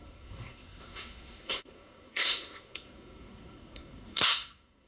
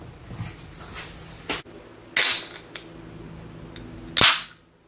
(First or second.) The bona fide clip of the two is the second